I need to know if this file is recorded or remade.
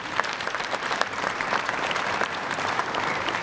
remade